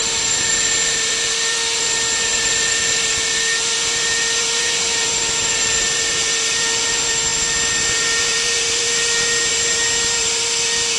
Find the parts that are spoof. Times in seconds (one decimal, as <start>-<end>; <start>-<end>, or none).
0.0-11.0